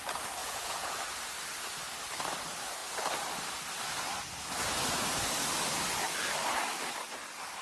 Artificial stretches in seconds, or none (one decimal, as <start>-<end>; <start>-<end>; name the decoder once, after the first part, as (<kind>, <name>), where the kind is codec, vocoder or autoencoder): 0.4-1.0 (vocoder, Vocos)